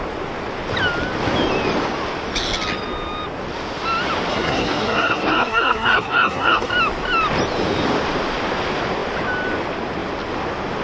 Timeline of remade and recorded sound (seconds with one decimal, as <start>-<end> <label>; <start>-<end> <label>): 0.0-4.3 recorded; 4.3-6.7 remade; 6.7-10.8 recorded